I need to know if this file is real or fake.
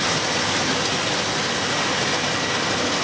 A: real